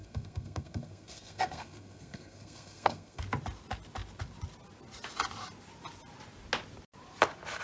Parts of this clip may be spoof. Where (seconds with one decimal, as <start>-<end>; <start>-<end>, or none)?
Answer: 0.0-3.2

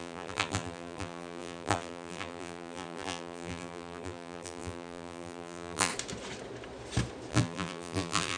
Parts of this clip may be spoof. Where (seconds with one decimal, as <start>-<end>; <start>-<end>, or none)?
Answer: 0.0-5.9; 7.3-8.4

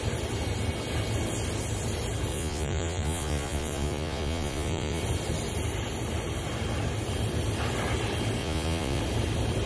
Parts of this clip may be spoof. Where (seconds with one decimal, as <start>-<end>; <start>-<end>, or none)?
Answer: 2.3-5.0; 8.4-9.0

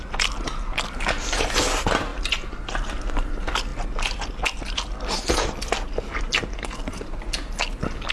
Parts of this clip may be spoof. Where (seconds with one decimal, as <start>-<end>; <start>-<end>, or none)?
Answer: none

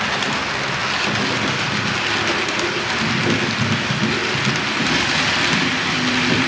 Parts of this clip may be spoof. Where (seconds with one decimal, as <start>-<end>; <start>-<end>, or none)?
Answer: none

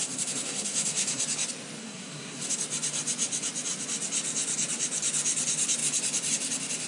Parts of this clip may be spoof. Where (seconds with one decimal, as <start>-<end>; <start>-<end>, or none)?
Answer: 0.0-1.2; 1.8-2.5

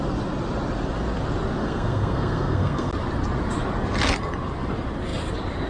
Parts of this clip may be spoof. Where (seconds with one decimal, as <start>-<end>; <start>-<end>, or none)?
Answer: 1.6-2.9

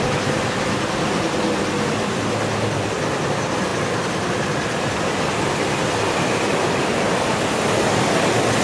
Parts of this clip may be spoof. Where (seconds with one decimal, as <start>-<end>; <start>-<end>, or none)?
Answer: none